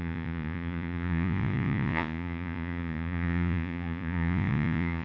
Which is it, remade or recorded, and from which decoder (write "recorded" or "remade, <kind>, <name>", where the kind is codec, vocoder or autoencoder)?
remade, vocoder, Vocos